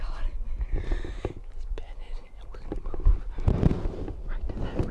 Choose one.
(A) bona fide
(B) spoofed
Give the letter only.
A